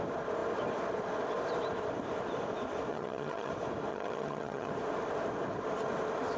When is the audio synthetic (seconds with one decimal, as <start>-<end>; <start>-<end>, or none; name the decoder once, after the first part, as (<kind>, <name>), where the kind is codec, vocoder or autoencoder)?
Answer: 2.9-3.5 (vocoder, HiFi-GAN); 3.9-4.7